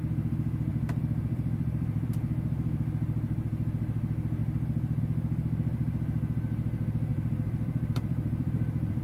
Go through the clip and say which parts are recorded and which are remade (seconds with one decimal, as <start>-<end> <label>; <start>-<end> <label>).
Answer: 0.0-0.7 recorded; 0.7-2.1 remade; 2.1-7.1 recorded; 7.1-9.0 remade